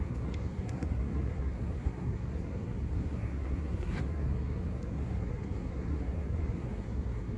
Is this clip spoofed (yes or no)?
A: yes